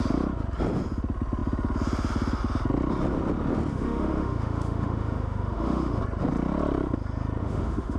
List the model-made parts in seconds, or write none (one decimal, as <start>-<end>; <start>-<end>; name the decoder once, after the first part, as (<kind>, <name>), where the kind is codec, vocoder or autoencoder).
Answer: 3.7-6.0 (autoencoder, DAC-VAE); 7.4-8.0